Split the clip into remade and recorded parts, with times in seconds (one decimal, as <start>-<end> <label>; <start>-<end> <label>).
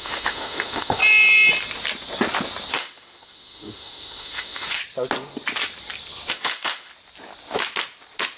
0.0-1.0 remade; 1.0-2.7 recorded; 2.7-4.8 remade; 4.8-6.3 recorded; 6.3-6.9 remade; 6.9-8.4 recorded